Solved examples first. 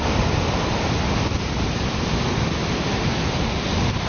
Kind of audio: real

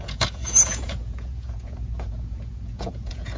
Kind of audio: fake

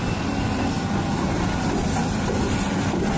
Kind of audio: real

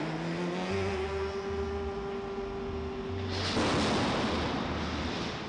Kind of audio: real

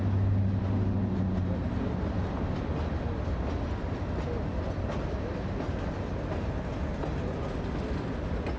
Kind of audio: real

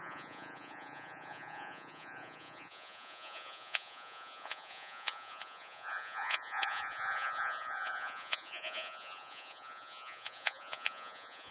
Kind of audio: fake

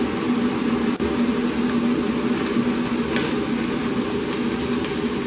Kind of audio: real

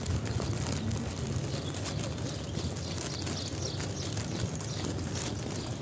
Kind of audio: real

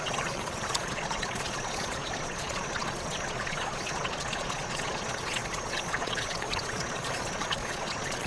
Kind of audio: fake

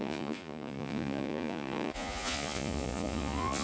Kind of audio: fake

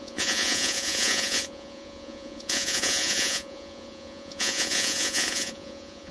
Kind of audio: fake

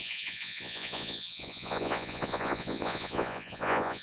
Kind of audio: fake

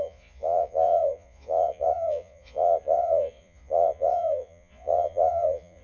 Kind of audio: fake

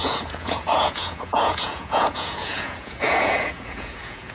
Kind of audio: fake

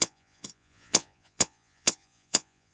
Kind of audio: fake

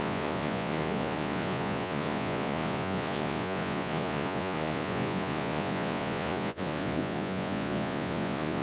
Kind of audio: fake